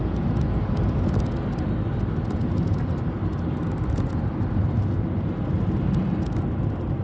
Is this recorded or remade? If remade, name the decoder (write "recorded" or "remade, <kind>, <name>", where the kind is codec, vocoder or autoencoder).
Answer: recorded